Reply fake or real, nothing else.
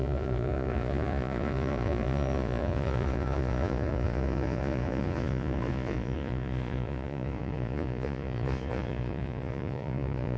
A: fake